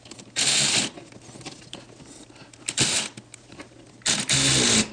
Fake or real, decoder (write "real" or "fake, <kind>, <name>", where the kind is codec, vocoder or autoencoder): real